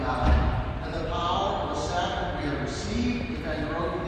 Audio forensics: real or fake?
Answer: real